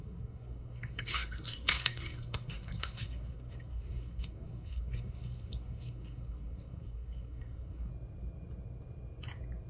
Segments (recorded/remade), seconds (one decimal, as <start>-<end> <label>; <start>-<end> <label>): 0.0-7.9 remade; 7.9-9.7 recorded